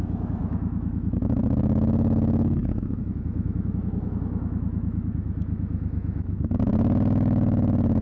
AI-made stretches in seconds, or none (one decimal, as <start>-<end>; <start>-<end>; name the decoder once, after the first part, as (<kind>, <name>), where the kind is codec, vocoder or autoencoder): 0.0-8.0 (autoencoder, DAC-VAE)